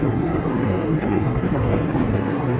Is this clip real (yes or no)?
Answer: no